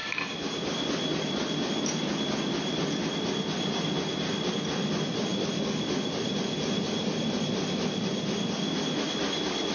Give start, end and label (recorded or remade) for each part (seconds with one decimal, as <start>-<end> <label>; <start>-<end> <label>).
0.0-9.7 recorded